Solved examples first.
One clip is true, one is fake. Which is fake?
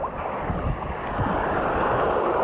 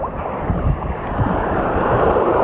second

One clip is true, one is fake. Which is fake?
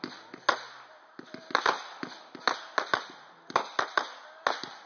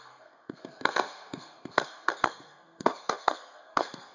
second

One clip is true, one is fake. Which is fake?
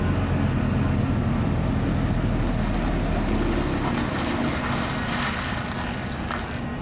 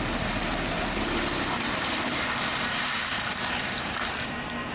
second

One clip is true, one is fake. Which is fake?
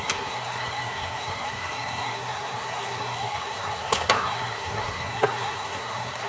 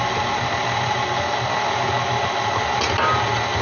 first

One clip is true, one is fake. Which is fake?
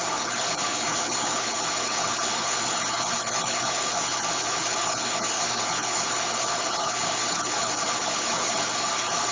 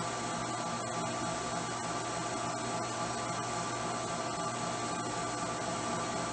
first